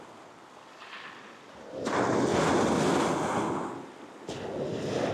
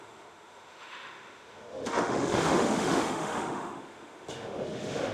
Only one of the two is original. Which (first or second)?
first